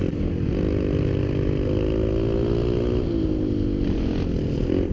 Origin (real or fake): real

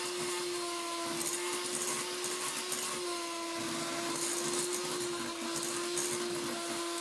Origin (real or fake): real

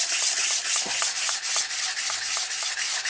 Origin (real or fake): real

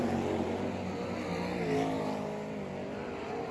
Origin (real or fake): real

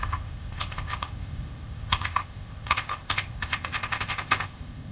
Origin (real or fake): fake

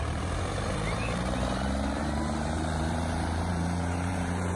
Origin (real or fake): fake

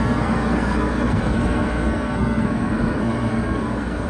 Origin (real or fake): fake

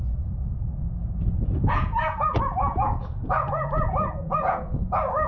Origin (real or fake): fake